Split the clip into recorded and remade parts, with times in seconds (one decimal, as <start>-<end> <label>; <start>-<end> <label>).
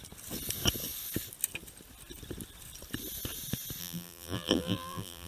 0.0-3.8 recorded; 3.8-5.3 remade